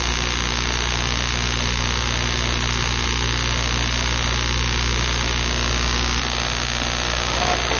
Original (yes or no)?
yes